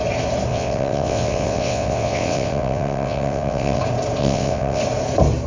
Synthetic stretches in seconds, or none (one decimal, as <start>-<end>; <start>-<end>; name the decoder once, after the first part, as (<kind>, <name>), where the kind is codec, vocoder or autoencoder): 0.5-3.8 (vocoder, WaveNeXt); 4.2-4.8